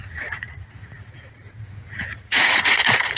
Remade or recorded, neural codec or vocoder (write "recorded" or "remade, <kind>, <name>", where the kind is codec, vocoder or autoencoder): remade, vocoder, Vocos